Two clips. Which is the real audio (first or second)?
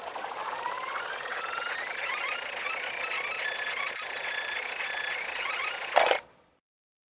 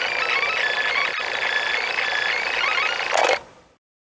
second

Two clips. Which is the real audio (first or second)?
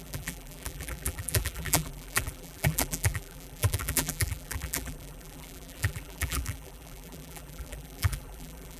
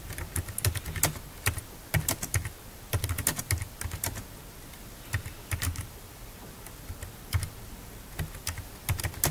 second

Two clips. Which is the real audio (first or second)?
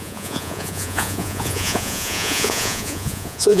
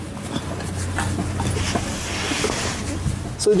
second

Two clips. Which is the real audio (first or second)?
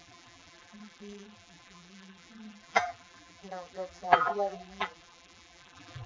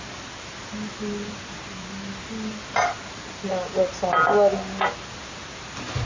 second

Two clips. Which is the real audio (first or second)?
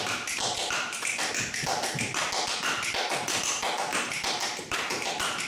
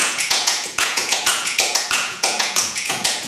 first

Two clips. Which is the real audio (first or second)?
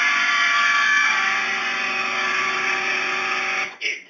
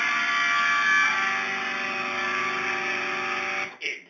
second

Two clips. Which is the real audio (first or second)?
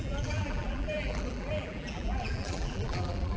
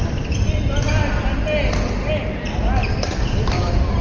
second